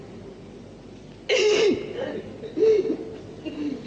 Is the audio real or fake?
real